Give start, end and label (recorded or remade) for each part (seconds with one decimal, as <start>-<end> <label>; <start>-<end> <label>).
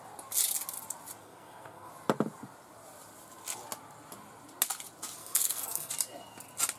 0.0-1.2 recorded; 1.2-1.9 remade; 1.9-5.2 recorded; 5.2-5.9 remade; 5.9-6.8 recorded